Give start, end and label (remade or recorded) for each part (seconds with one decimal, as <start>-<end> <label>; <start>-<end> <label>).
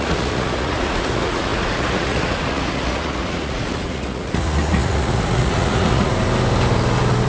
0.0-6.1 remade; 6.1-7.3 recorded